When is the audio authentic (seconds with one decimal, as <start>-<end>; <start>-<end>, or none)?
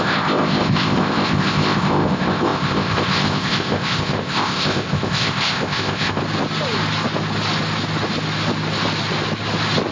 6.2-9.9